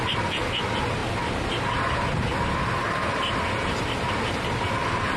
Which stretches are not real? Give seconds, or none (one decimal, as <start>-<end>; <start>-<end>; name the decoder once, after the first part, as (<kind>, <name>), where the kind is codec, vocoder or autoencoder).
none

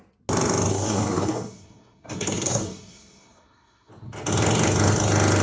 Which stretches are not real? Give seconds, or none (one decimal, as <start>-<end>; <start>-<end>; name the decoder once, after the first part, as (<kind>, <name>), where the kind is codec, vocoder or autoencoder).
0.7-3.9 (codec, SNAC)